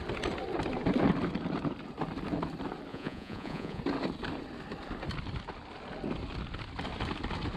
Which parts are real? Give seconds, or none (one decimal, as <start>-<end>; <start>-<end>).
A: 0.0-2.9; 3.8-7.6